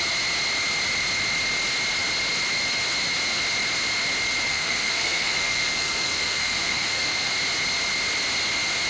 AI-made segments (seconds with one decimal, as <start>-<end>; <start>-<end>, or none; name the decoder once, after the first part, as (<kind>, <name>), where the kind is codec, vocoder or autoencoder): 4.5-7.3 (codec, SNAC)